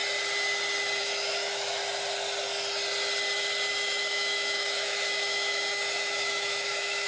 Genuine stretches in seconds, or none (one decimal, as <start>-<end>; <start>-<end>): 0.0-1.0; 1.8-3.7